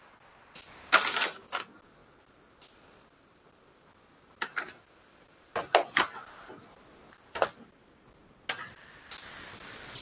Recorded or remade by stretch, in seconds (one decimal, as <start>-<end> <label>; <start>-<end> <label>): 0.0-10.0 recorded